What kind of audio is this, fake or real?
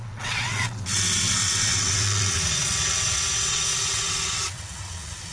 fake